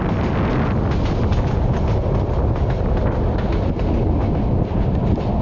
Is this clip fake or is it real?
real